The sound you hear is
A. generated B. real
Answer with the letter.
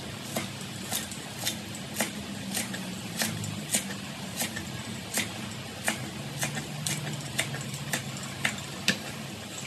B